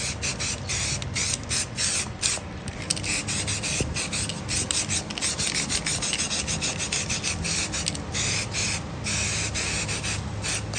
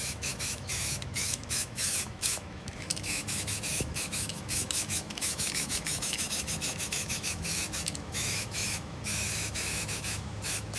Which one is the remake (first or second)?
second